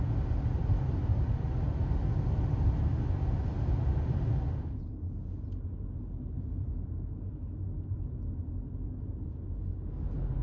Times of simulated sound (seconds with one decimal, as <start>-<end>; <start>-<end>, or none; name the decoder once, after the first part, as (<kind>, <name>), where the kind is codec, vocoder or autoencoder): none